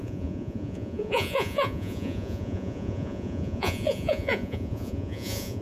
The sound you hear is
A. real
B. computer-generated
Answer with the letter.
B